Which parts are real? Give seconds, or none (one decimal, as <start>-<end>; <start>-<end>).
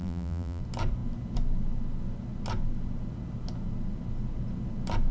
0.6-5.1